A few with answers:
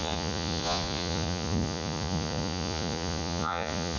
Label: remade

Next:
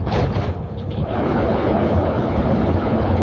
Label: remade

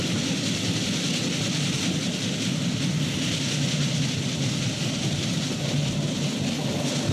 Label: recorded